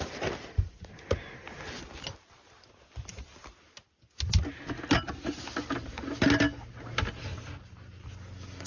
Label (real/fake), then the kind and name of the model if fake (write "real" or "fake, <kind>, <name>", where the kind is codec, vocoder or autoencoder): real